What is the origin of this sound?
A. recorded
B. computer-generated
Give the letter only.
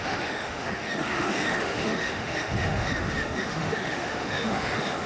B